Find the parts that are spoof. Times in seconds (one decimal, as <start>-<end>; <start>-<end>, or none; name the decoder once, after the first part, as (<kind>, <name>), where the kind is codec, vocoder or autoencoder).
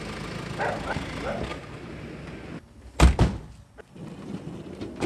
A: none